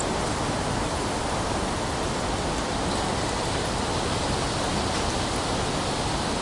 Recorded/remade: recorded